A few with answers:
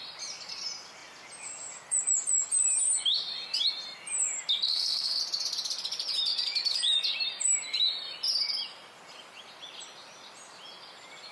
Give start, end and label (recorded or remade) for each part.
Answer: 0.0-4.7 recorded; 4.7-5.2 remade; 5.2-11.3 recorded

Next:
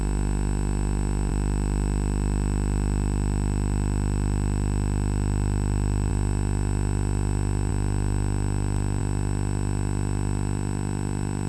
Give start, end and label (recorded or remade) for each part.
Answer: 0.0-11.5 recorded

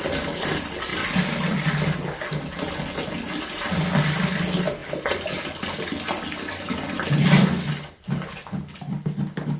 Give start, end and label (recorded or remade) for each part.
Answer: 0.0-9.6 recorded

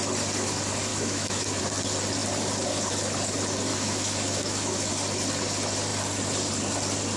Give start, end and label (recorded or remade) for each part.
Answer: 0.0-0.9 recorded; 0.9-1.6 remade; 1.6-3.7 recorded; 3.7-4.9 remade; 4.9-7.2 recorded